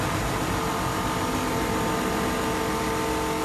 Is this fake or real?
real